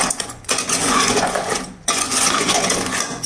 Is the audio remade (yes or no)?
yes